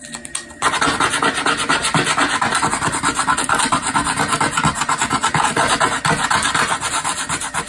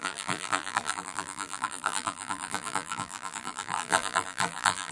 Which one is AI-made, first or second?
second